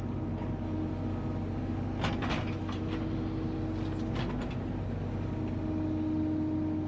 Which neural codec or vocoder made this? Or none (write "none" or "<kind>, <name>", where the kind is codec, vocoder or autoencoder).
none